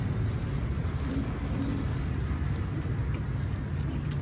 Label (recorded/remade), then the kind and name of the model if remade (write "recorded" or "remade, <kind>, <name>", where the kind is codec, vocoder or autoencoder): recorded